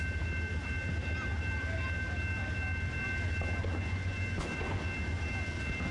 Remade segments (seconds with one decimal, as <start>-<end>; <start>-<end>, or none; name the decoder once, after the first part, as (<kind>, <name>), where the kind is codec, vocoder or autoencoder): 3.6-4.8 (vocoder, Vocos)